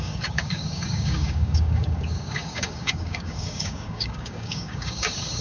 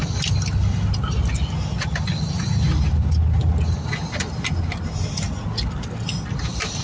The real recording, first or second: second